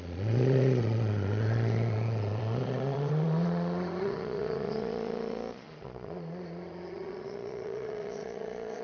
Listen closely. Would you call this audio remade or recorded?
remade